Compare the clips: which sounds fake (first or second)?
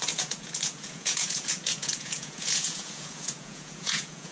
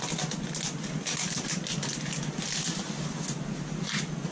first